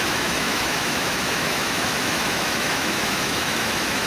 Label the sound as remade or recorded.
remade